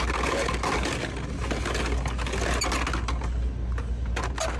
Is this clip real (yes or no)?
yes